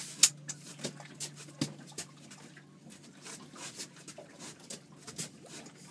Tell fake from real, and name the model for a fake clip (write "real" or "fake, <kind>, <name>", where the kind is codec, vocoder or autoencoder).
real